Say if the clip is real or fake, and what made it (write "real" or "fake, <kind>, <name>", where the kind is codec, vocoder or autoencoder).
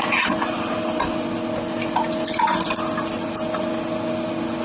real